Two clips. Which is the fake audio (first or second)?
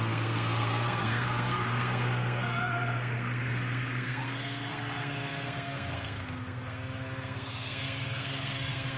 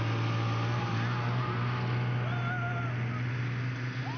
first